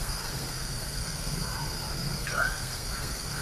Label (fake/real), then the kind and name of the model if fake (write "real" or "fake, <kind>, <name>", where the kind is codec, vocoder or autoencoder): fake, codec, SNAC